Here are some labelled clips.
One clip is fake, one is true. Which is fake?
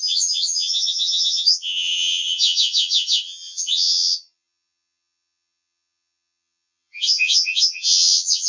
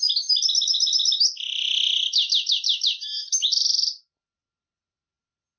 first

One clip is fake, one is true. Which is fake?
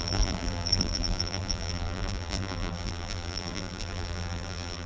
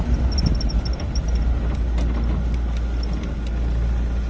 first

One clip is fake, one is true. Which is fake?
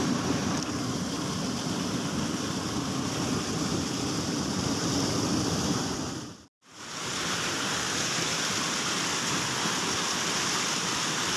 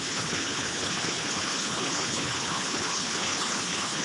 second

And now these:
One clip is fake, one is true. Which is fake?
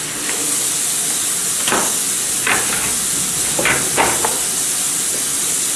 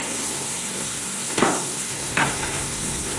second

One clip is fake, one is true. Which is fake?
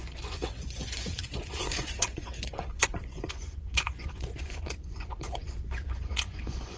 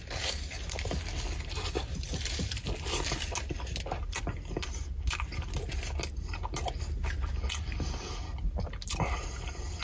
first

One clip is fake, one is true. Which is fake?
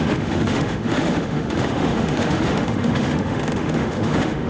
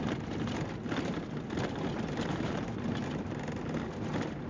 first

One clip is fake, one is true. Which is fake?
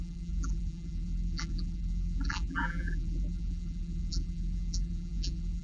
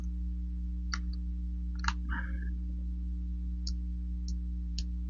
first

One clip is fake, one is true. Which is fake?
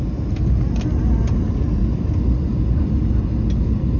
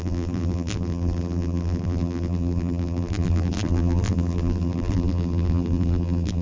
second